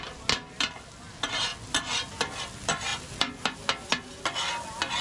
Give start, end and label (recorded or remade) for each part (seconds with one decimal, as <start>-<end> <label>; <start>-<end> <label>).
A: 0.0-5.0 recorded